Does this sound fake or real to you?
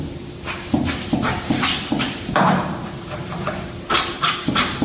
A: fake